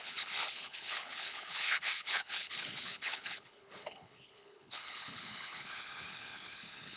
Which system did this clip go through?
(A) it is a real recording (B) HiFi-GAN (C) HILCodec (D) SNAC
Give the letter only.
C